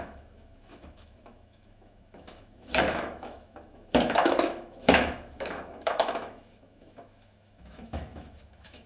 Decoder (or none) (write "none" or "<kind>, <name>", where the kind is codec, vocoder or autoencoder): autoencoder, DAC-VAE